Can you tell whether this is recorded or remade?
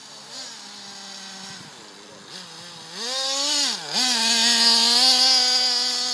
recorded